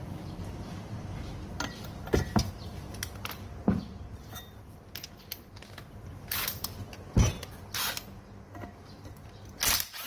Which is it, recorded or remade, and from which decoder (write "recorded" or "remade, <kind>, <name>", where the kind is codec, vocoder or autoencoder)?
recorded